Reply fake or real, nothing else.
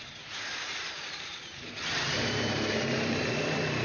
fake